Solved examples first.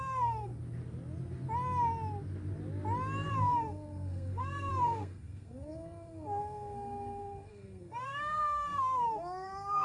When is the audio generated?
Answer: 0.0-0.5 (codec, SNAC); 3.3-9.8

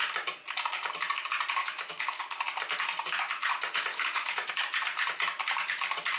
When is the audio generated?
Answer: 1.6-2.2 (autoencoder, DAC-VAE); 3.9-4.5

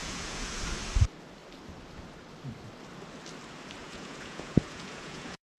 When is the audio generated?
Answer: 0.0-0.6 (vocoder, Vocos); 3.8-5.6

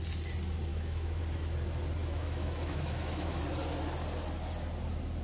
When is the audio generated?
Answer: 0.7-1.2 (autoencoder, DAC-VAE); 2.0-3.4

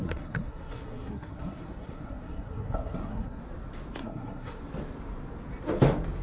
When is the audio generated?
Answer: 0.0-3.4 (codec, SNAC); 4.0-4.6

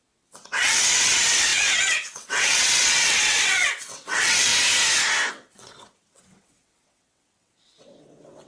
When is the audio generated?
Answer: 0.0-4.5 (vocoder, WaveNeXt); 5.3-8.5

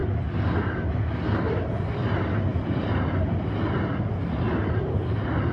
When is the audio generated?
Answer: 2.5-3.4 (vocoder, BigVGAN v2)

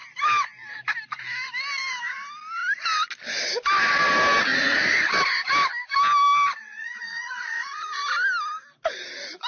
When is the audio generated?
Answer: 4.5-5.1 (vocoder, Vocos); 6.6-8.0